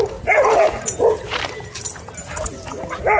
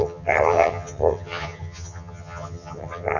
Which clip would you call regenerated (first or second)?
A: second